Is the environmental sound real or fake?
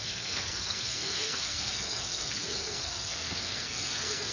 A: fake